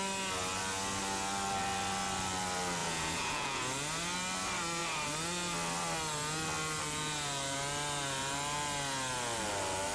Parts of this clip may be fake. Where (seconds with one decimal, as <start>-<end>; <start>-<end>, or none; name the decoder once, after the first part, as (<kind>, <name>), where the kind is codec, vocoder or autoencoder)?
2.8-3.6 (vocoder, Vocos)